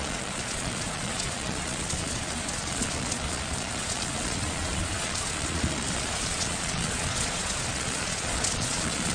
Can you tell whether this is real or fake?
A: fake